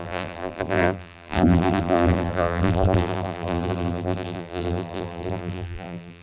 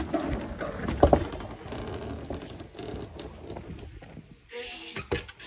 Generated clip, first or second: first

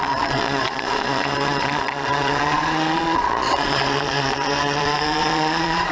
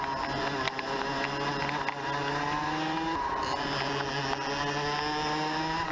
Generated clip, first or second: first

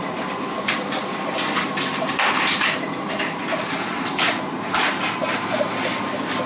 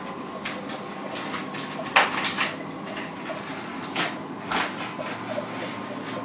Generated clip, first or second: first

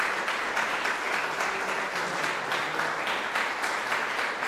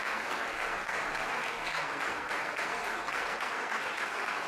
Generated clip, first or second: second